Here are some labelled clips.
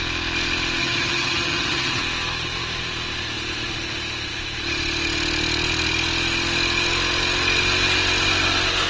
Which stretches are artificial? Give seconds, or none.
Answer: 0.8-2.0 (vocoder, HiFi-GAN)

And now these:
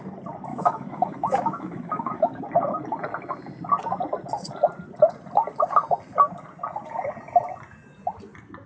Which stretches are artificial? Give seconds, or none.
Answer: 0.5-2.4 (autoencoder, DAC-VAE)

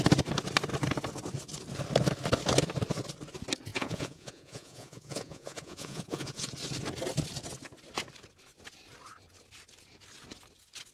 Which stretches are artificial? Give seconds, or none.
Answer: 3.7-6.5 (vocoder, Vocos)